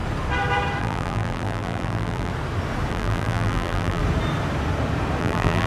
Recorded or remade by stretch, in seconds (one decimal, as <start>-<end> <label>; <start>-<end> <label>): 0.0-0.8 recorded; 0.8-2.3 remade; 2.3-2.9 recorded; 2.9-4.0 remade; 4.0-5.2 recorded; 5.2-5.7 remade